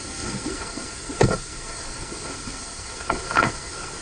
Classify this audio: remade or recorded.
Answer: remade